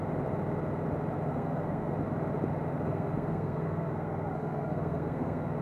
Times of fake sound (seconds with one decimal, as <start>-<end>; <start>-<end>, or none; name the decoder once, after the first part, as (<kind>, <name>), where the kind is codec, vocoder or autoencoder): 1.3-1.9 (codec, SNAC); 2.7-5.6